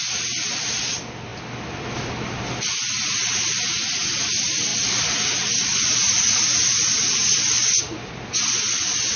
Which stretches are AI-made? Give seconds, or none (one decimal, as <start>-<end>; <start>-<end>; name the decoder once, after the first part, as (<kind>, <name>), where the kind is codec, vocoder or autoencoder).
none